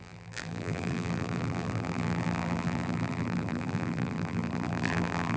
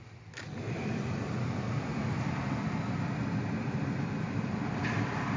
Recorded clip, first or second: second